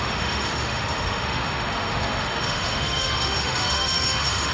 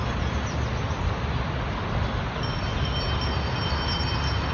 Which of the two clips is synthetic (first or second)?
first